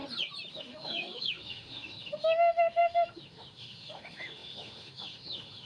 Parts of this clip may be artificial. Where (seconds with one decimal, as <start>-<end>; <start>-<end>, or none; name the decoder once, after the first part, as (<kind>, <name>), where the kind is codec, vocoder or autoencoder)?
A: 0.5-5.7 (autoencoder, DAC-VAE)